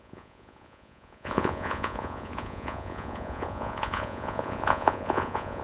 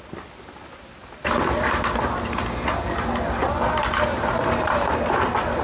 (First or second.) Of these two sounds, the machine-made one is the first